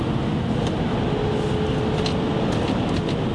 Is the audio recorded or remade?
recorded